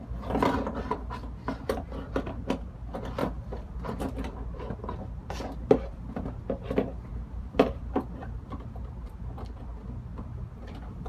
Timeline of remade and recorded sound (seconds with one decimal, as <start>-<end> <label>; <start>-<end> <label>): 0.0-3.2 recorded; 3.2-4.0 remade; 4.0-7.1 recorded; 7.1-8.8 remade; 8.8-10.1 recorded; 10.1-11.1 remade